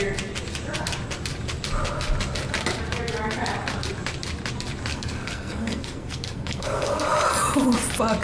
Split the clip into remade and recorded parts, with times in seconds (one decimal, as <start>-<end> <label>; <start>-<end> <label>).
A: 0.0-4.9 recorded; 4.9-7.0 remade; 7.0-8.2 recorded